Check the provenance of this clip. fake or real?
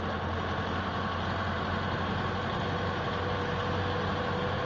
real